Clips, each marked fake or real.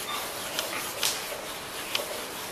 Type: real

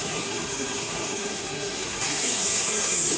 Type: fake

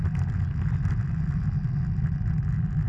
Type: real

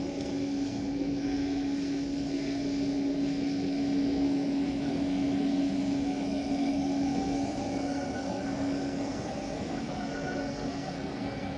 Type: fake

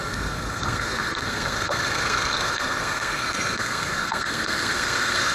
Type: fake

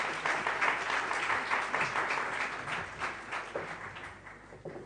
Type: real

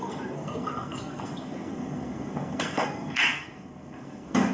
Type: fake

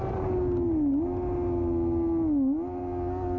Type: real